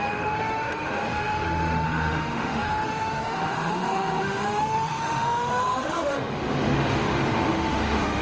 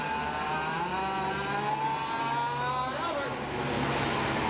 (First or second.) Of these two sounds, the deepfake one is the first